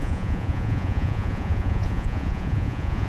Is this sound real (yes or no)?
no